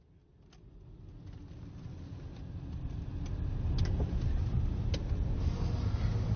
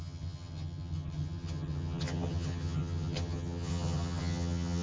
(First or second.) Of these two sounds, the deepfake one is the second